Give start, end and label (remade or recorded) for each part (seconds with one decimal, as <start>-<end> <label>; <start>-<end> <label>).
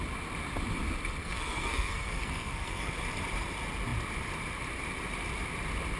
0.0-1.2 recorded; 1.2-2.9 remade; 2.9-6.0 recorded